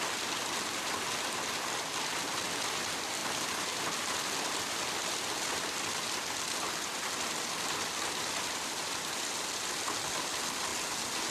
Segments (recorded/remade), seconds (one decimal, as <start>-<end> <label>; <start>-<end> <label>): 0.0-11.3 recorded